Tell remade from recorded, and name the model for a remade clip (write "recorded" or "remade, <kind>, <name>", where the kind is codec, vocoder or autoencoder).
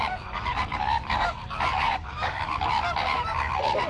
remade, codec, DAC